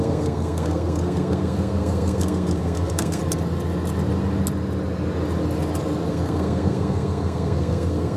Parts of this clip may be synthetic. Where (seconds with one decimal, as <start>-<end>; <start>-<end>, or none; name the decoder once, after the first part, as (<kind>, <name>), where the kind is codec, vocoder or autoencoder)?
0.0-3.2 (codec, SNAC); 6.1-8.2